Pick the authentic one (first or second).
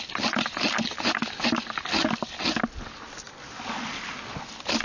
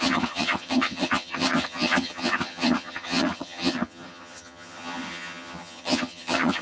first